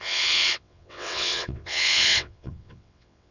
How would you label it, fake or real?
fake